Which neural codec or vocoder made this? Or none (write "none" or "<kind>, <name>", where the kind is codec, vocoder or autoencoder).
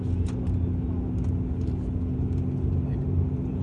none